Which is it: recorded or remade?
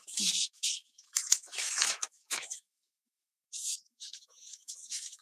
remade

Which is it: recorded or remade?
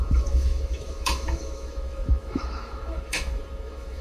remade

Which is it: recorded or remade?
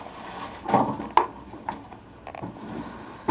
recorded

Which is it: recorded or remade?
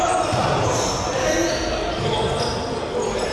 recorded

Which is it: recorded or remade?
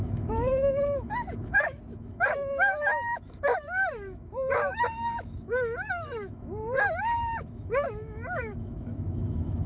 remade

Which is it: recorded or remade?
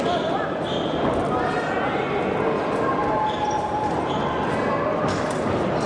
recorded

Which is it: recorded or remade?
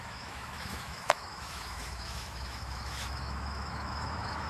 remade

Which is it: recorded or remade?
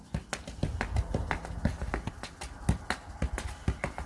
recorded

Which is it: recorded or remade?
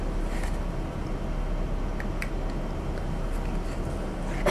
recorded